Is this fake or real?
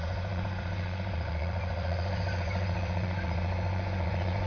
fake